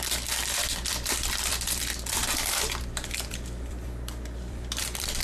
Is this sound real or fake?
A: fake